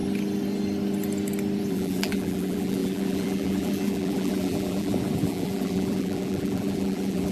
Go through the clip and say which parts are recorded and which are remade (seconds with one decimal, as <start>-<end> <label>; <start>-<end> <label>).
0.0-1.7 recorded; 1.7-7.3 remade